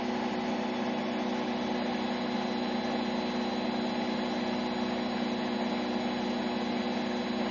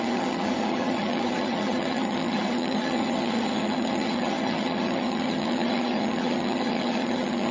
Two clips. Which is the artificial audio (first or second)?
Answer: second